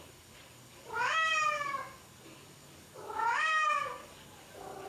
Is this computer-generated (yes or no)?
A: yes